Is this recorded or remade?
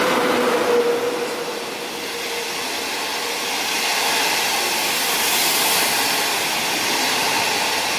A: recorded